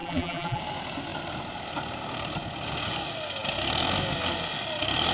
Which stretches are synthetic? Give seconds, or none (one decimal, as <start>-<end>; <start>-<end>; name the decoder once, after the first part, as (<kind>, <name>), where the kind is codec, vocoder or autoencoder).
0.0-0.6 (vocoder, BigVGAN v2)